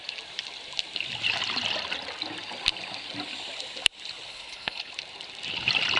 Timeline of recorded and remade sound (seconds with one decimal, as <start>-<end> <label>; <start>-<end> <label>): 0.0-4.3 recorded; 4.3-4.9 remade; 4.9-6.0 recorded